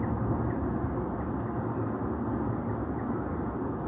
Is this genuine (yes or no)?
yes